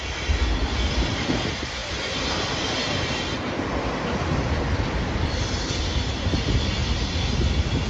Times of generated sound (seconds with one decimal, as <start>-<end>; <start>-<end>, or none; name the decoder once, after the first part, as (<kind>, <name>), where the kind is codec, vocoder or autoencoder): none